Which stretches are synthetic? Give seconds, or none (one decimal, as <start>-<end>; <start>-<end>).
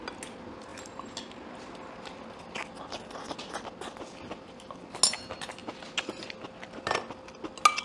none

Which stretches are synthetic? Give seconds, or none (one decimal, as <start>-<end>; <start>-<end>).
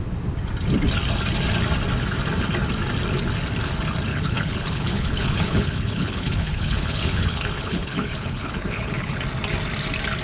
4.1-9.2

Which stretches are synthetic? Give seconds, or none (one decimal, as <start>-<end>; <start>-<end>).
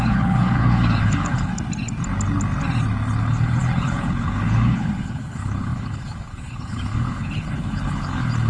0.0-1.5; 3.2-8.5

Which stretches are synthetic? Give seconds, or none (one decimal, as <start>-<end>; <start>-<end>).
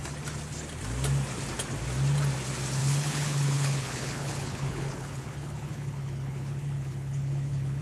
2.8-7.8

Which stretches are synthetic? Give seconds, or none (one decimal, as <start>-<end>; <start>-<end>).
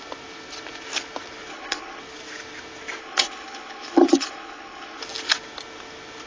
1.5-2.0; 3.0-5.0